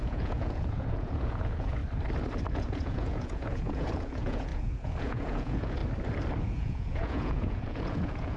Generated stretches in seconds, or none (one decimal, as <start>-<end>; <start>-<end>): 0.0-1.8; 2.5-5.8; 6.4-8.4